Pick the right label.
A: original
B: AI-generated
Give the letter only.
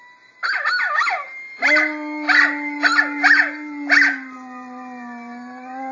A